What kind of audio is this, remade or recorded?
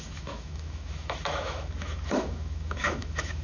remade